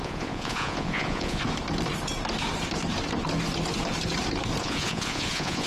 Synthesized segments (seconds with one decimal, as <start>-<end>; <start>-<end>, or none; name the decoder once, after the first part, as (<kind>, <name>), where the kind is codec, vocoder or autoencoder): 0.0-1.4 (vocoder, Vocos); 4.6-5.7